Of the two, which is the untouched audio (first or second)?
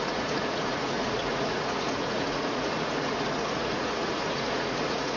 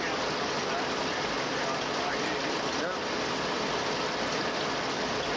second